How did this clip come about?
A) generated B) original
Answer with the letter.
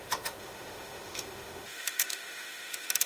A